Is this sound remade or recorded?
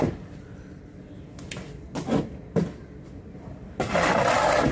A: recorded